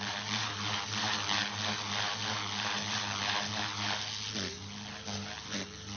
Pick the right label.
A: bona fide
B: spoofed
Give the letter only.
A